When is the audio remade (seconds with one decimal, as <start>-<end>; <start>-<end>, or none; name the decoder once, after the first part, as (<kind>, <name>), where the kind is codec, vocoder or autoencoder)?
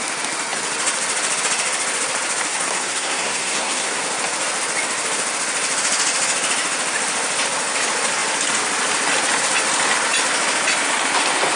2.5-4.0 (codec, SNAC)